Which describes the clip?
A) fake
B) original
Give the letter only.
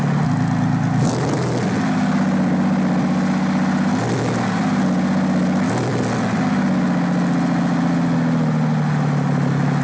B